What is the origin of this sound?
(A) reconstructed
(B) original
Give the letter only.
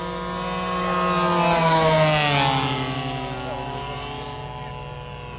B